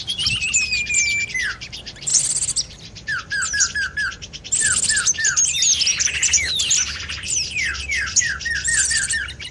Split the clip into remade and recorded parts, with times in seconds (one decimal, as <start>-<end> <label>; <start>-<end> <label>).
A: 0.0-2.1 remade; 2.1-2.7 recorded; 2.7-9.5 remade